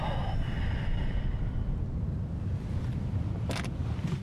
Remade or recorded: recorded